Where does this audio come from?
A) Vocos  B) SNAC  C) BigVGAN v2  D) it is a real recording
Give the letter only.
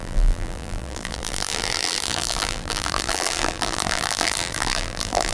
C